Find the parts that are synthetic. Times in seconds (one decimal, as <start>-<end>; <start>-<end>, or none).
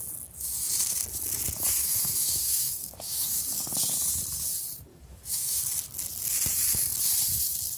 1.8-3.4; 4.9-5.6